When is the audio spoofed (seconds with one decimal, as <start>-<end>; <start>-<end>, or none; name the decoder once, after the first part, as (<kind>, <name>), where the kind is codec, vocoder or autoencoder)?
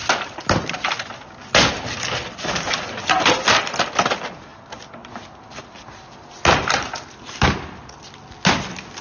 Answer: none